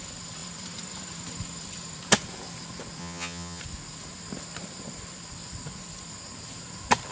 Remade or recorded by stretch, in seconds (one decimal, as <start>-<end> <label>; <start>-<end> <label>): 0.0-3.0 recorded; 3.0-3.6 remade; 3.6-7.1 recorded